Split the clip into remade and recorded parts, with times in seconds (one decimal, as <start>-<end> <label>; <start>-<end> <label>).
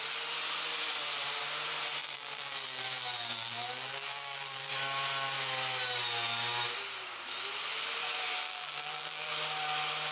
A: 0.0-2.0 recorded; 2.0-4.7 remade; 4.7-8.4 recorded; 8.4-9.3 remade; 9.3-10.1 recorded